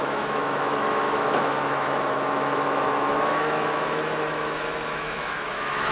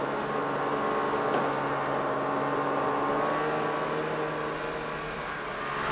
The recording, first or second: second